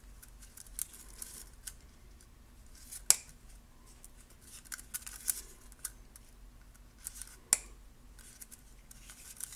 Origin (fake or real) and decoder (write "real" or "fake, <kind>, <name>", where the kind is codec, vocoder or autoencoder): real